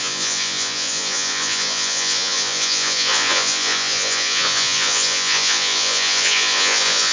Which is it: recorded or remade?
remade